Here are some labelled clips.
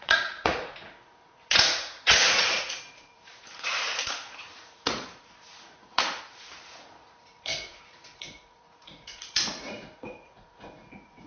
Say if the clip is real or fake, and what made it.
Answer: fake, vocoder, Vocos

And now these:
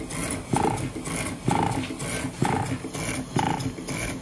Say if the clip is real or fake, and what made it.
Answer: real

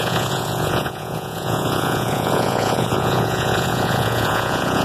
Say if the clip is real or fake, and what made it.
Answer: fake, vocoder, Vocos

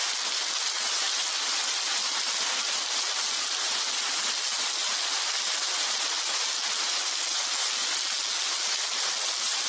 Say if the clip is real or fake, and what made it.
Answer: real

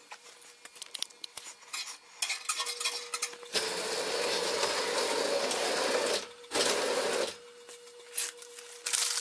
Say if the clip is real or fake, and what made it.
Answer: real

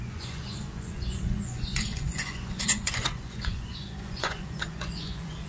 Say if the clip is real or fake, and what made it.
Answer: fake, vocoder, Vocos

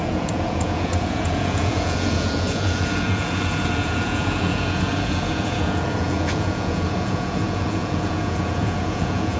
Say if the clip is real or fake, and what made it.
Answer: fake, vocoder, Vocos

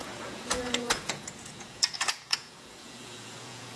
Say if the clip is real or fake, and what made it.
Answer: fake, vocoder, Vocos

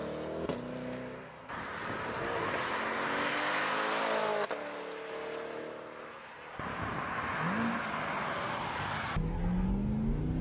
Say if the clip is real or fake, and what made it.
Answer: real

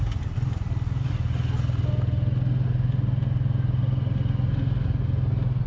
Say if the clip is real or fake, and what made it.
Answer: real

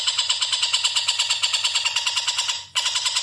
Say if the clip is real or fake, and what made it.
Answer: fake, vocoder, Vocos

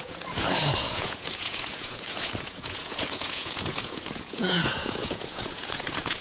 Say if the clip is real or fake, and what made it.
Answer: fake, vocoder, Vocos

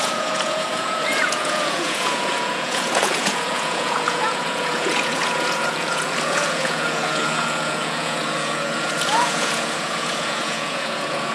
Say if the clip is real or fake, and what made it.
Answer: fake, vocoder, Vocos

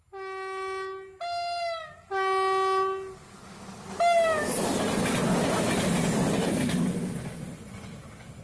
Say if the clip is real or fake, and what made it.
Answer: real